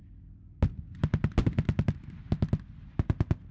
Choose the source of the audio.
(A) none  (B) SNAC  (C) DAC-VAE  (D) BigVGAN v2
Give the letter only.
A